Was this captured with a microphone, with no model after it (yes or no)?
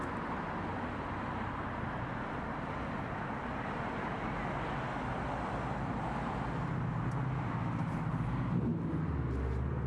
yes